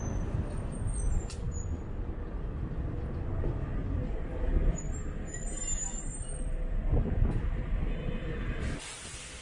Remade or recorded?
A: recorded